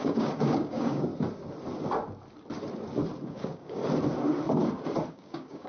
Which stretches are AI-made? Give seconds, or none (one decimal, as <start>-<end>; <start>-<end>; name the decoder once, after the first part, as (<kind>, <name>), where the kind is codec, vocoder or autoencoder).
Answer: 0.0-1.1 (codec, DAC); 3.3-3.8; 5.1-5.7